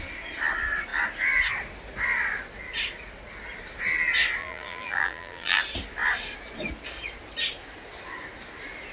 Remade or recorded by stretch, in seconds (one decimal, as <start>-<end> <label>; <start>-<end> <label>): 0.0-4.4 recorded; 4.4-5.6 remade; 5.6-8.9 recorded